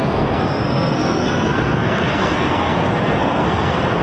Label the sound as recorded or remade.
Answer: remade